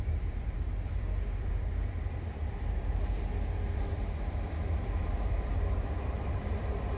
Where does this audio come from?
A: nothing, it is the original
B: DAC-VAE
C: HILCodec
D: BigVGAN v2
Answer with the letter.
D